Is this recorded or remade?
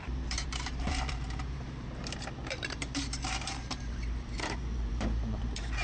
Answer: remade